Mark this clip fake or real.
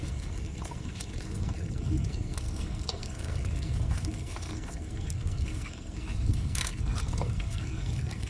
fake